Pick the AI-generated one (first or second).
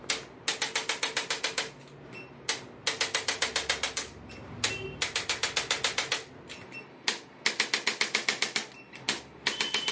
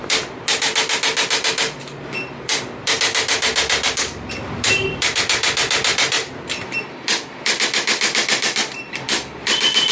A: second